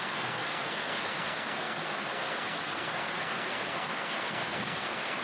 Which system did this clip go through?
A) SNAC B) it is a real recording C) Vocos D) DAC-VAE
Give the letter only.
A